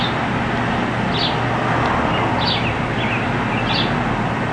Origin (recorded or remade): recorded